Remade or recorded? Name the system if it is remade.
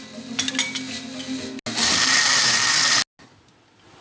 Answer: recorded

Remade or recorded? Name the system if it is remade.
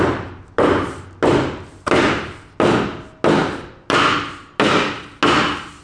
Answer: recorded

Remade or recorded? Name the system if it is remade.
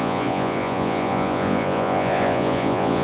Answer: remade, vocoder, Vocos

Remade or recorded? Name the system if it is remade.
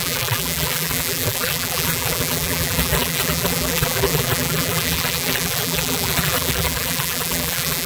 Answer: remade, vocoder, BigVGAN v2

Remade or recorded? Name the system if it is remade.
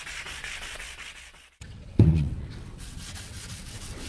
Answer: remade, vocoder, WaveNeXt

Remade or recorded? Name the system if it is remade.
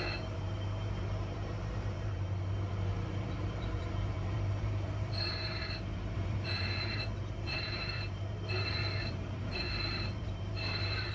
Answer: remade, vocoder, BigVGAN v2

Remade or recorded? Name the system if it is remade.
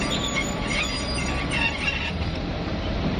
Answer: recorded